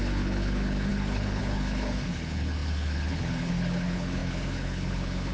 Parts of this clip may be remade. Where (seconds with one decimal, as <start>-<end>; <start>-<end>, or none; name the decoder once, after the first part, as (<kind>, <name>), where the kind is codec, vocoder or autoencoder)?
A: 0.0-5.3 (codec, HILCodec)